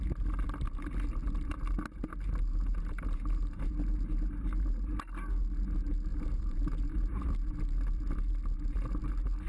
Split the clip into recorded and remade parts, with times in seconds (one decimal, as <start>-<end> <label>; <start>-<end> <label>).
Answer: 0.0-2.0 recorded; 2.0-4.9 remade; 4.9-6.1 recorded; 6.1-7.5 remade; 7.5-9.5 recorded

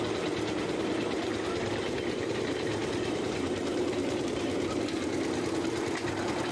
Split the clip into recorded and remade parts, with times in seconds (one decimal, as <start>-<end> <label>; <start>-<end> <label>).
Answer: 0.0-1.3 recorded; 1.3-4.3 remade; 4.3-6.5 recorded

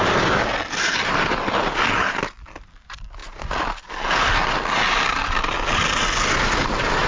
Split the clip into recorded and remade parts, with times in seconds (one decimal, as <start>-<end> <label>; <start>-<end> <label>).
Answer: 0.0-7.1 recorded